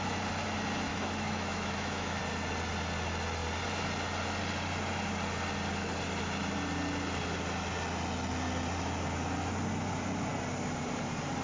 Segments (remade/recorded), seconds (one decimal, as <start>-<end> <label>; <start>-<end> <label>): 0.0-0.9 recorded; 0.9-2.2 remade; 2.2-11.4 recorded